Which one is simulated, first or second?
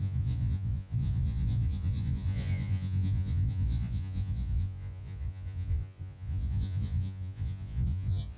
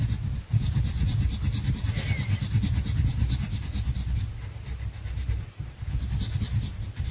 first